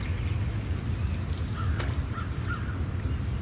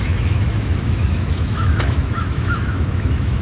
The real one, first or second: first